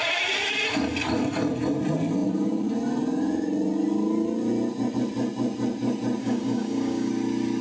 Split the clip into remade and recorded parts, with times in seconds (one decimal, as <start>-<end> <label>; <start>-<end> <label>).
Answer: 0.0-6.2 recorded; 6.2-7.1 remade; 7.1-7.6 recorded